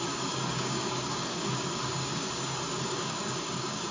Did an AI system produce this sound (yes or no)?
yes